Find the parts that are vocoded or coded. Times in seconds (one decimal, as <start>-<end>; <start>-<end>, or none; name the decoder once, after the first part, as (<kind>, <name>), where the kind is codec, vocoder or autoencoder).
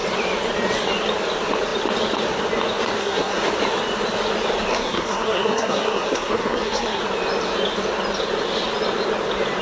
3.0-3.5 (codec, SNAC); 4.7-7.0